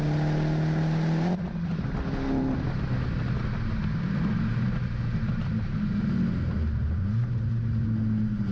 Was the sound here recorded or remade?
recorded